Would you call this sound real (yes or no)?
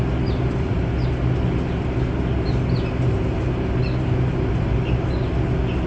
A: yes